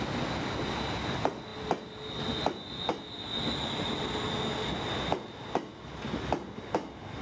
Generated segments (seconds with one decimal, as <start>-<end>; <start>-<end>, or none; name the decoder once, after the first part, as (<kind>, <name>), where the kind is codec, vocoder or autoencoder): none